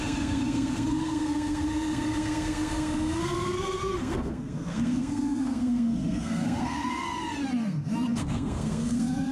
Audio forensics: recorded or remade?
remade